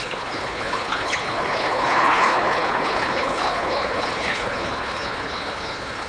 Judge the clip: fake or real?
fake